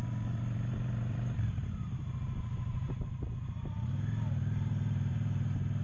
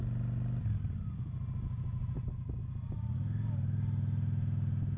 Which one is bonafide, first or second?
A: second